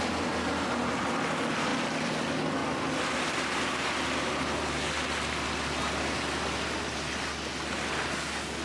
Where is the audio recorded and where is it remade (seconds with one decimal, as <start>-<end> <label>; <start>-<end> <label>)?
0.0-8.6 recorded

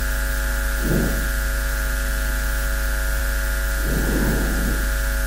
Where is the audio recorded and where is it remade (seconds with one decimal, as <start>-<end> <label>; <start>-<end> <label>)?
0.0-5.3 recorded

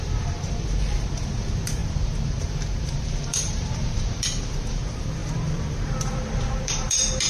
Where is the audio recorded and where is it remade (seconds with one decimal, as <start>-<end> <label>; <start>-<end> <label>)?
0.0-7.3 remade

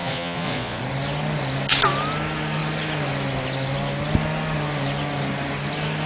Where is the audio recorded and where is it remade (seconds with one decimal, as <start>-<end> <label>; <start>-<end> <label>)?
0.0-0.8 remade; 0.8-6.1 recorded

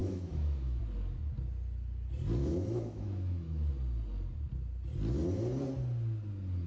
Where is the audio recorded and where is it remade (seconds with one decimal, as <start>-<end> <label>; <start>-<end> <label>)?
0.0-0.8 remade; 0.8-2.4 recorded; 2.4-3.7 remade; 3.7-6.7 recorded

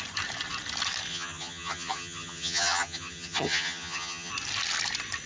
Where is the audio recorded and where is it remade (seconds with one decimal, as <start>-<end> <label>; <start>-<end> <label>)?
0.0-1.1 recorded; 1.1-4.3 remade; 4.3-5.3 recorded

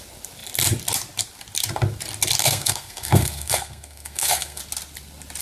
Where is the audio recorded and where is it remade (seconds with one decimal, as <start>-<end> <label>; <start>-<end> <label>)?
0.0-2.4 recorded; 2.4-4.6 remade; 4.6-5.4 recorded

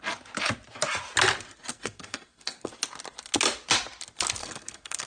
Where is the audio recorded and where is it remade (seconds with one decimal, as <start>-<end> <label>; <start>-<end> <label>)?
0.0-1.7 recorded; 1.7-2.7 remade; 2.7-4.4 recorded; 4.4-5.1 remade